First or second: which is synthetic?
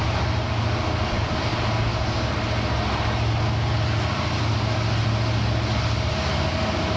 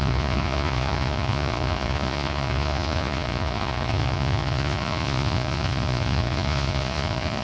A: second